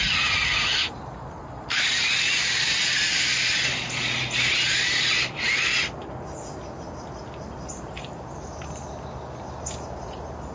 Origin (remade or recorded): recorded